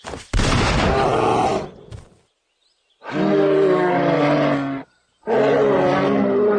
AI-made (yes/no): no